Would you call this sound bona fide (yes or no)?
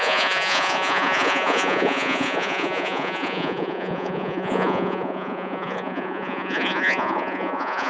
no